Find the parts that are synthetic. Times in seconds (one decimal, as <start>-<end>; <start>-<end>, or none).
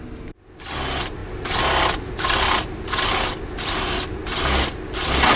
none